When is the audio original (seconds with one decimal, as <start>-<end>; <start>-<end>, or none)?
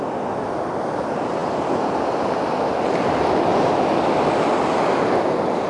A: 0.0-5.7